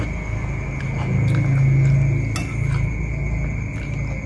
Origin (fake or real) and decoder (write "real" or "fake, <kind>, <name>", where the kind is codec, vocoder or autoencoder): real